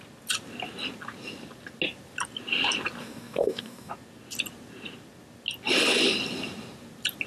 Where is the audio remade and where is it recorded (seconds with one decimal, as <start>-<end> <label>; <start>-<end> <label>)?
0.0-3.0 recorded; 3.0-3.9 remade; 3.9-7.3 recorded